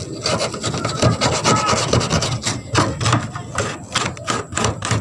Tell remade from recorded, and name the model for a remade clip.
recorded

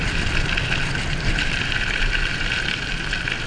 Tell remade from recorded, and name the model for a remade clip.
recorded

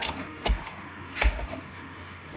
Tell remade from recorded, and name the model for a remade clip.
remade, autoencoder, DAC-VAE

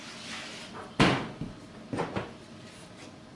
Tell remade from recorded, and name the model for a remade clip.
recorded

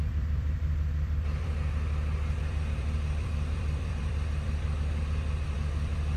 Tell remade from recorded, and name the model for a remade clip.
remade, vocoder, BigVGAN v2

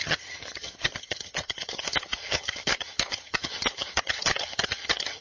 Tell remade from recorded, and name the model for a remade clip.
remade, vocoder, HiFi-GAN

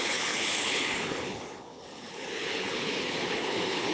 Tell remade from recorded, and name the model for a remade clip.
remade, codec, HILCodec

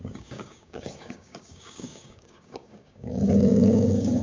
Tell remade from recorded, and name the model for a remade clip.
remade, codec, DAC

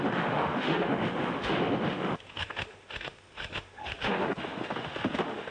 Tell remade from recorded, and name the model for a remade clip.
remade, autoencoder, DAC-VAE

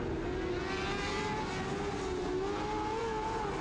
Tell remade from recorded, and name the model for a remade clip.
recorded